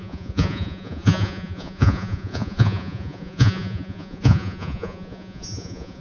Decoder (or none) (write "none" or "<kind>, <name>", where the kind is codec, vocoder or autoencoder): vocoder, Vocos